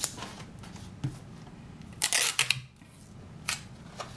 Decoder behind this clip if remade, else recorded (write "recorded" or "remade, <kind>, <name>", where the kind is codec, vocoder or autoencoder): recorded